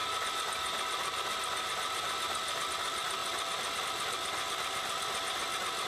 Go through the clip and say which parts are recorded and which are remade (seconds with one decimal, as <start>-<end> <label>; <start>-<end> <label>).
0.0-3.2 recorded; 3.2-3.8 remade; 3.8-5.9 recorded

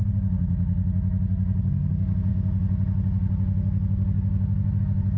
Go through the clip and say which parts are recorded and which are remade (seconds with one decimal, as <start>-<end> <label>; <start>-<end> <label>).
0.0-5.2 recorded

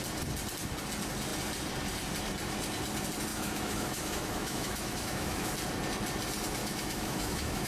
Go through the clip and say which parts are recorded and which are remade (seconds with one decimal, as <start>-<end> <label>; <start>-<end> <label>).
0.0-3.3 recorded; 3.3-5.5 remade; 5.5-6.6 recorded; 6.6-7.7 remade